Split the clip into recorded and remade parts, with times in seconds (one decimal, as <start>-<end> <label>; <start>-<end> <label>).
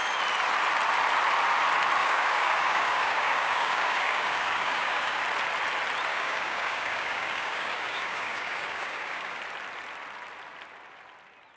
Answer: 0.0-2.0 recorded; 2.0-5.2 remade; 5.2-6.1 recorded; 6.1-9.4 remade; 9.4-11.6 recorded